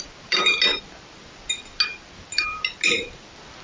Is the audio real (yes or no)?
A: yes